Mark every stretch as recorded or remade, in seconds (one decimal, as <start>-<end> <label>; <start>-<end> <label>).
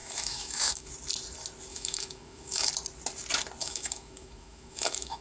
0.0-0.9 remade; 0.9-1.7 recorded; 1.7-2.7 remade; 2.7-3.6 recorded; 3.6-5.2 remade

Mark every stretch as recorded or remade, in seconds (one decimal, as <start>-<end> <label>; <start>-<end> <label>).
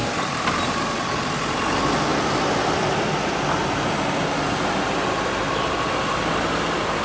0.0-1.2 remade; 1.2-7.0 recorded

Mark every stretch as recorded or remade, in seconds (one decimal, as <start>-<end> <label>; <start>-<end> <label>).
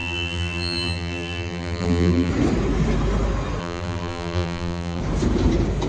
0.0-2.3 remade; 2.3-3.6 recorded; 3.6-5.0 remade; 5.0-5.9 recorded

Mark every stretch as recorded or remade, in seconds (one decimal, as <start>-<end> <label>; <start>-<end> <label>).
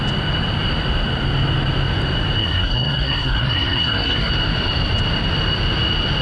0.0-2.4 recorded; 2.4-4.3 remade; 4.3-6.2 recorded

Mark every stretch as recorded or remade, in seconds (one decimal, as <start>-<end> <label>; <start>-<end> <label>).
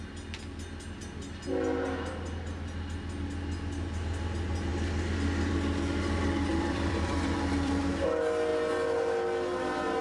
0.0-6.5 recorded; 6.5-7.8 remade; 7.8-10.0 recorded